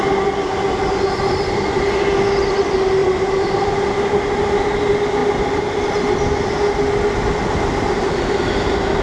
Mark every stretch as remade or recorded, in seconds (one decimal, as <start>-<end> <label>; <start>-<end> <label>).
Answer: 0.0-3.0 recorded; 3.0-3.7 remade; 3.7-9.0 recorded